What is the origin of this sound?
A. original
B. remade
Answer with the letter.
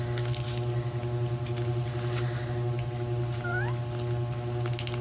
A